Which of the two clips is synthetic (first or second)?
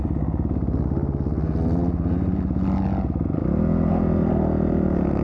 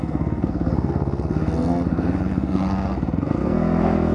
second